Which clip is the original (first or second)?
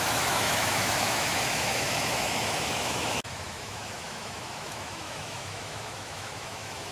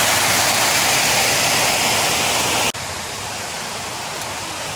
second